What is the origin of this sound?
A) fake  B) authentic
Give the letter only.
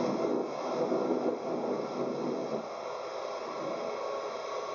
B